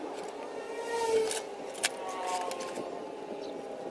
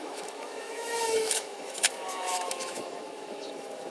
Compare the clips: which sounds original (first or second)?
first